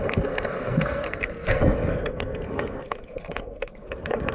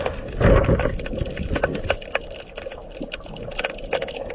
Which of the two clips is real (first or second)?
second